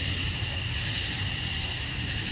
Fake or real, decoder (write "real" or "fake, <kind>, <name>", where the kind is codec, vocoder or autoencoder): real